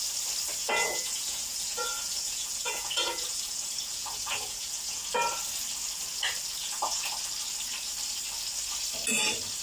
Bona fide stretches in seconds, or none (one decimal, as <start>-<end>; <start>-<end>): 0.0-0.6; 5.0-6.6; 7.1-9.6